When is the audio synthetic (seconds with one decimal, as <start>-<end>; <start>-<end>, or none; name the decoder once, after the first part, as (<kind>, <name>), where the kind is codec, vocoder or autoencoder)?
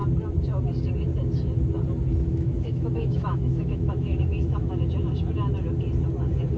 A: 2.3-4.7 (autoencoder, DAC-VAE)